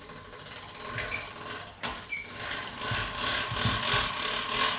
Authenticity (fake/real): real